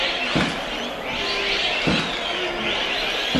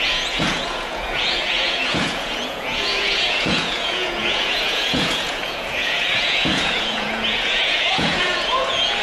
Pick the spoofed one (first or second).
second